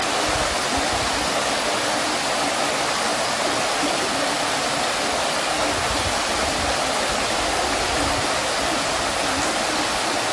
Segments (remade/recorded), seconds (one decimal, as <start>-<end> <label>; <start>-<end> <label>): 0.0-10.3 recorded